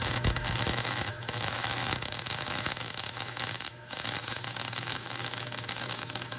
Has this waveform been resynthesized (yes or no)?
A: yes